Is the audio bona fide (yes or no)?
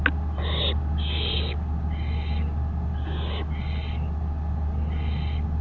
yes